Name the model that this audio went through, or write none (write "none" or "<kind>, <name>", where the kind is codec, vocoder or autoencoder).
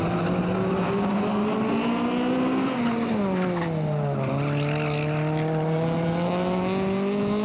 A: none